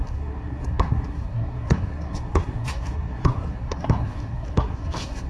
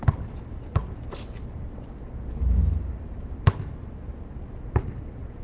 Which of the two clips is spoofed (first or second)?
first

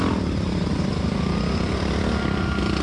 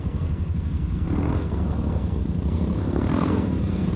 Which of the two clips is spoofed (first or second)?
second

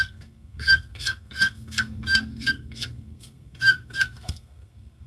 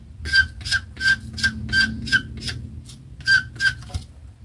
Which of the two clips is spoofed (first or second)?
first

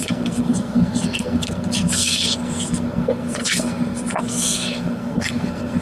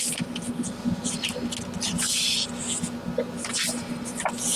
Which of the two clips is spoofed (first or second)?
first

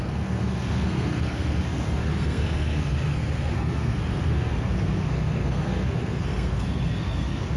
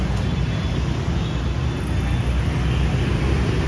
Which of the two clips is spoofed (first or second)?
first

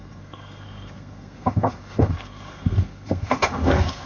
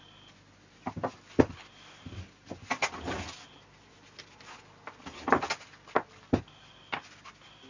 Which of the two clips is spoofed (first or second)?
first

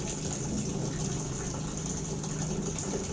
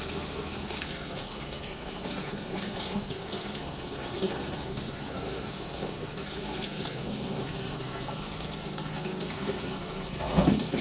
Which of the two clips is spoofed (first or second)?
second